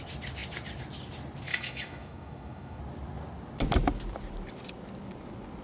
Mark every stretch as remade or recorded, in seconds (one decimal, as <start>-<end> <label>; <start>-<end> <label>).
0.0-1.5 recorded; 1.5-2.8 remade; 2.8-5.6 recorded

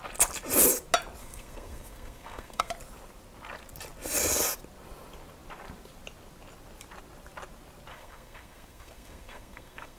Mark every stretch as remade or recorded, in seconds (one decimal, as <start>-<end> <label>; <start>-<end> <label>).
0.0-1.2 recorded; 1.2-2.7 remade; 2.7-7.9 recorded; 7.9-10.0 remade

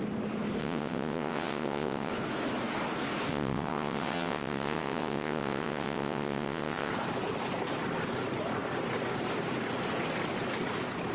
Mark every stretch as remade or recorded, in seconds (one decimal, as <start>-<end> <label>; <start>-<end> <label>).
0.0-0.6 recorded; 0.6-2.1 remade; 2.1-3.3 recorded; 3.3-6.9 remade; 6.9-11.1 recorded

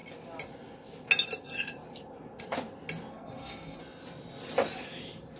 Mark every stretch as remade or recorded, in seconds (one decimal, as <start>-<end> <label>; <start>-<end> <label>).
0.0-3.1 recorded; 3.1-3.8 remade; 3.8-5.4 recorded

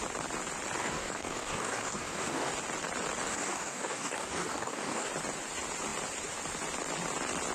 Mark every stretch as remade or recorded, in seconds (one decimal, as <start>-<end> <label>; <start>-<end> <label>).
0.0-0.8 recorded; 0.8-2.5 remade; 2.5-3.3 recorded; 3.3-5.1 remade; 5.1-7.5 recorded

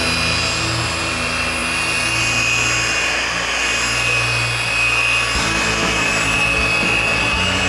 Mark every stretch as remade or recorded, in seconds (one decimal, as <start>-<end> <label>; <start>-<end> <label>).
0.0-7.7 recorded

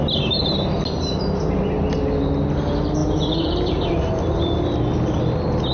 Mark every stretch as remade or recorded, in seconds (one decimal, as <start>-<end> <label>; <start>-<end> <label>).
0.0-3.0 recorded; 3.0-4.2 remade; 4.2-5.7 recorded